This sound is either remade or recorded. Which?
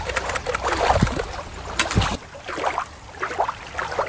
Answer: recorded